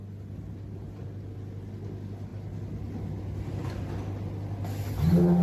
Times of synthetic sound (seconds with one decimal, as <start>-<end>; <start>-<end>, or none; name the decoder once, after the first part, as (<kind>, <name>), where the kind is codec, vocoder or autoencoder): none